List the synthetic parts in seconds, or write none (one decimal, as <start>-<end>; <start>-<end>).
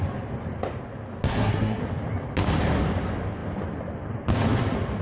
1.3-1.8